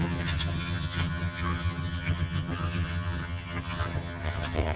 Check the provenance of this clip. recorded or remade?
remade